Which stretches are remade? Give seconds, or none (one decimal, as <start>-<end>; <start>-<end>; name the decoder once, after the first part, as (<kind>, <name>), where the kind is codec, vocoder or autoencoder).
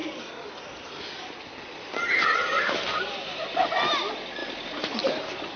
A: none